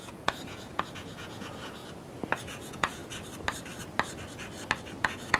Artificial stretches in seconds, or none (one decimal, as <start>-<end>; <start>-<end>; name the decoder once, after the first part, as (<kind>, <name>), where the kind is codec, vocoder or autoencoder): 0.0-1.8 (vocoder, Vocos); 2.4-3.0; 5.0-5.4